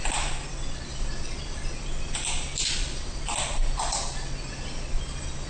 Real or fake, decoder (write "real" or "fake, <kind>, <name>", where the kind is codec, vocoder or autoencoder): real